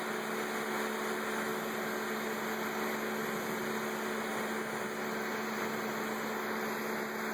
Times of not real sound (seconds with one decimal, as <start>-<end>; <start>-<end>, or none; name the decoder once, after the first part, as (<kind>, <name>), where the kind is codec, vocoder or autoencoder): none